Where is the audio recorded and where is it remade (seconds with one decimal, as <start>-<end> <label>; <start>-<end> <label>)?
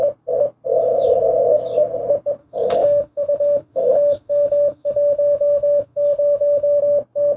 0.0-2.4 recorded; 2.4-6.8 remade; 6.8-7.4 recorded